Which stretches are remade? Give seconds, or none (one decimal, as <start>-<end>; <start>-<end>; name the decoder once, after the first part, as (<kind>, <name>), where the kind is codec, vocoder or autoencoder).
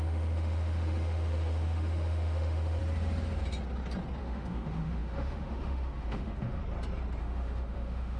0.0-2.8 (autoencoder, DAC-VAE); 4.2-6.6; 7.2-8.2